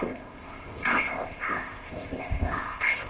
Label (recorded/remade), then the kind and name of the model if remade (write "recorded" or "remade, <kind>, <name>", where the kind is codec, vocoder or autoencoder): remade, codec, ZipCodec